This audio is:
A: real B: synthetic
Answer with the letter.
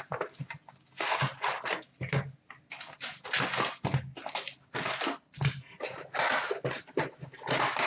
A